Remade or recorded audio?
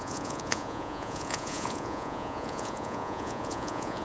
remade